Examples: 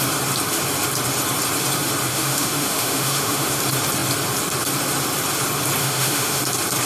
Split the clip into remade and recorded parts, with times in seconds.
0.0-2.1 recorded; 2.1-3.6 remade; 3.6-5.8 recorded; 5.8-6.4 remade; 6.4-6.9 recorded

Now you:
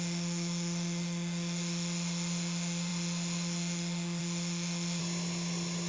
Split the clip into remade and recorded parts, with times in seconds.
0.0-5.0 remade; 5.0-5.9 recorded